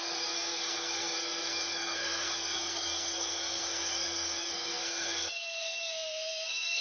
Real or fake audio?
fake